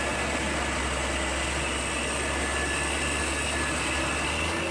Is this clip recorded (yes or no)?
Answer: yes